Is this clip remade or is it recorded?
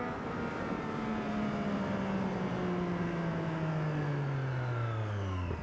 recorded